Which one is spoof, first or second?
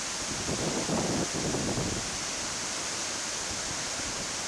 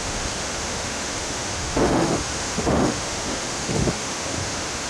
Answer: second